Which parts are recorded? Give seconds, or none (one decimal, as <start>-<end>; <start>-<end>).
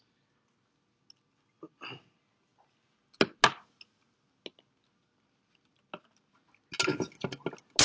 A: 0.0-7.8